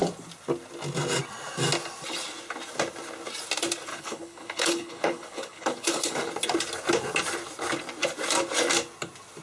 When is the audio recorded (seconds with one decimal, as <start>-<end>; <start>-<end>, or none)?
0.0-3.9; 6.3-9.4